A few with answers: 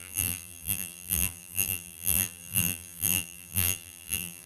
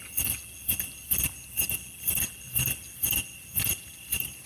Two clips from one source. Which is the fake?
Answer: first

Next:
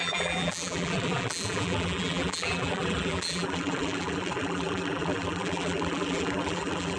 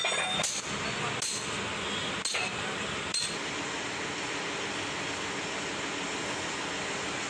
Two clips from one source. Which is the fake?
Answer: first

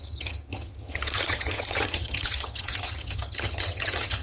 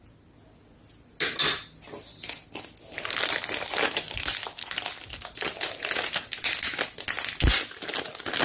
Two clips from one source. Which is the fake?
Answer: first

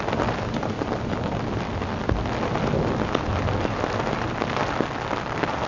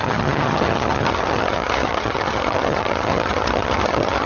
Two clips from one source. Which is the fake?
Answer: second